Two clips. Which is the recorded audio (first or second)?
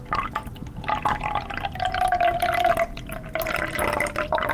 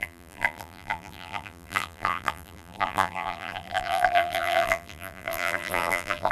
first